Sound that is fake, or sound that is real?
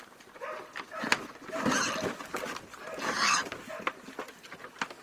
real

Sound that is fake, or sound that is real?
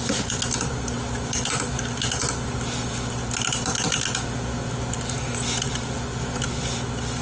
real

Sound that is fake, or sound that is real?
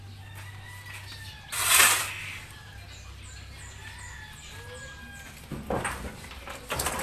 real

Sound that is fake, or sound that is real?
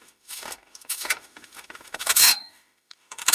fake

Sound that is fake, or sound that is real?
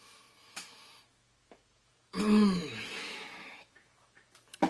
fake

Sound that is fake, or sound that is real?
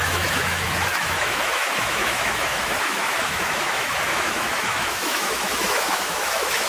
fake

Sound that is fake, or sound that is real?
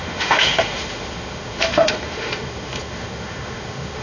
fake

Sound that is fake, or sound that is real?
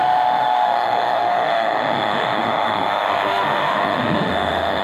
fake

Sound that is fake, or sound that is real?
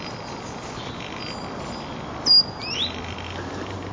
real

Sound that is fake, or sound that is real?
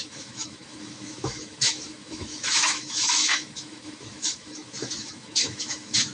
fake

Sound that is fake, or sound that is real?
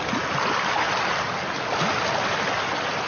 real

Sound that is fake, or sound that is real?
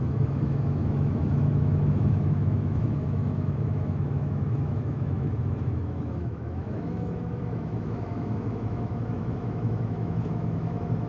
fake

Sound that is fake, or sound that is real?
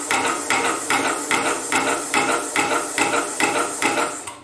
real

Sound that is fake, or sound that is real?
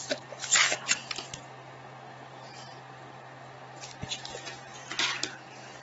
real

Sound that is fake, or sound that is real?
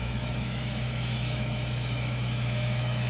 fake